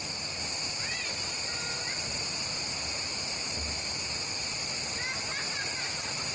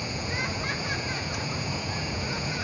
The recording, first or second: first